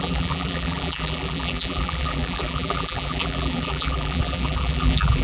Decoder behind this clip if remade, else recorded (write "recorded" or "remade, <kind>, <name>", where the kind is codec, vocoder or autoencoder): remade, vocoder, BigVGAN v2